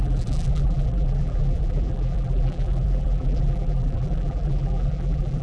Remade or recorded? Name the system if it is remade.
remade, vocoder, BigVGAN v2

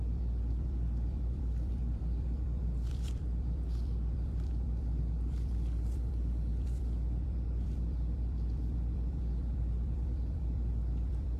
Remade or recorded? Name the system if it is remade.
remade, vocoder, BigVGAN v2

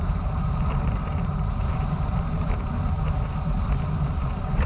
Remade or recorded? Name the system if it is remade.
remade, vocoder, BigVGAN v2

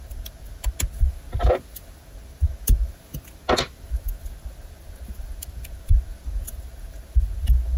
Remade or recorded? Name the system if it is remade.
recorded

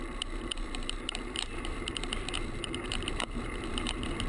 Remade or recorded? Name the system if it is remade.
remade, vocoder, BigVGAN v2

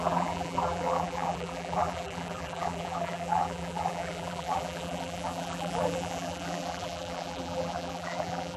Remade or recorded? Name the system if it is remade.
remade, vocoder, BigVGAN v2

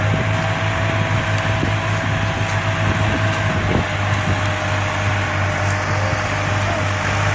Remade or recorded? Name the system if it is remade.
recorded